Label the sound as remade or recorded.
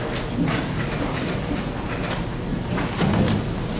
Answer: recorded